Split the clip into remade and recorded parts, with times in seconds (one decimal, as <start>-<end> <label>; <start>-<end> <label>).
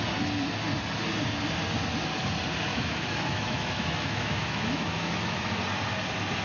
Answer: 0.0-2.7 recorded; 2.7-5.6 remade; 5.6-6.4 recorded